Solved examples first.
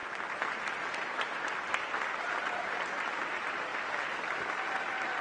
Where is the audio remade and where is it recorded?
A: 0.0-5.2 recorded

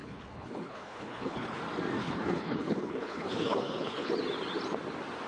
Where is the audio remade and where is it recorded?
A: 0.0-1.6 remade; 1.6-2.0 recorded; 2.0-4.1 remade; 4.1-5.3 recorded

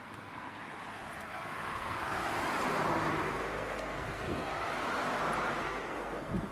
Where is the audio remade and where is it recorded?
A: 0.0-0.6 remade; 0.6-1.2 recorded; 1.2-2.2 remade; 2.2-3.3 recorded; 3.3-4.5 remade; 4.5-5.6 recorded; 5.6-6.5 remade

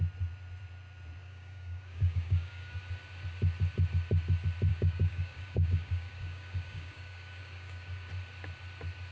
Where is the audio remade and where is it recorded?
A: 0.0-1.2 recorded; 1.2-2.8 remade; 2.8-4.7 recorded; 4.7-8.1 remade; 8.1-9.1 recorded

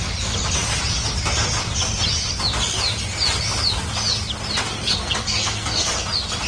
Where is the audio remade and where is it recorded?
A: 0.0-4.7 recorded; 4.7-5.9 remade; 5.9-6.5 recorded